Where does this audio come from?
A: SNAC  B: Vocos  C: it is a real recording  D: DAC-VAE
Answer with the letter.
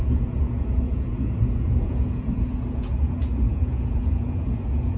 B